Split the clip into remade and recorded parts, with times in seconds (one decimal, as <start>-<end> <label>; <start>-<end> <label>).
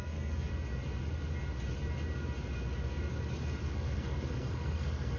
0.0-0.5 remade; 0.5-3.6 recorded; 3.6-5.2 remade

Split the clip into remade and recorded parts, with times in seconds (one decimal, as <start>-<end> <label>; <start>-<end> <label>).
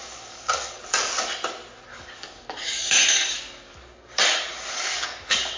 0.0-0.8 remade; 0.8-1.9 recorded; 1.9-5.6 remade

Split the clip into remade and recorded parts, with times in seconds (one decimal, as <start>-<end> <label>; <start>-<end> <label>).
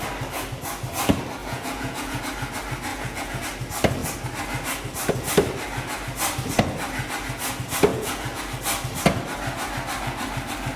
0.0-1.4 recorded; 1.4-2.2 remade; 2.2-2.9 recorded; 2.9-3.4 remade; 3.4-7.9 recorded; 7.9-8.4 remade; 8.4-10.8 recorded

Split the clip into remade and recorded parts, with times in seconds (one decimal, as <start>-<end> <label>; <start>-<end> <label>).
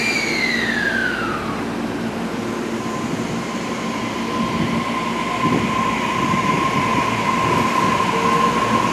0.0-8.9 recorded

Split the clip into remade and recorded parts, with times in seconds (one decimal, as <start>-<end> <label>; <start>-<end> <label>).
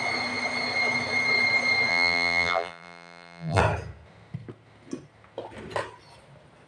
0.0-1.9 recorded; 1.9-3.6 remade; 3.6-6.7 recorded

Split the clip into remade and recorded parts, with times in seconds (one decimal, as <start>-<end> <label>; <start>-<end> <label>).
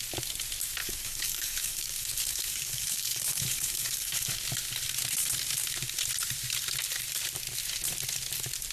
0.0-0.8 recorded; 0.8-4.4 remade; 4.4-8.7 recorded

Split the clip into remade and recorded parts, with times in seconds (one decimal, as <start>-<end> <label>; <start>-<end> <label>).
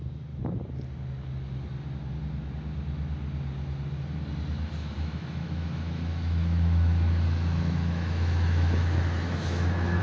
0.0-4.8 recorded; 4.8-10.0 remade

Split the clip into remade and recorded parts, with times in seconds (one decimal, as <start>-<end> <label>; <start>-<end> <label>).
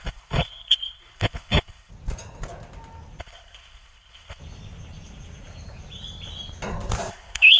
0.0-1.9 remade; 1.9-3.2 recorded; 3.2-4.4 remade; 4.4-7.1 recorded; 7.1-7.6 remade